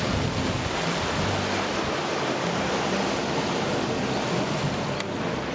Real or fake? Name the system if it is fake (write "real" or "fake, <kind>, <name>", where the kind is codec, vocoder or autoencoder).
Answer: real